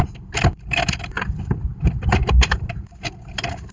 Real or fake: real